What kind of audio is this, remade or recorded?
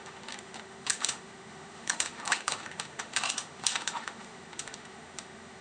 remade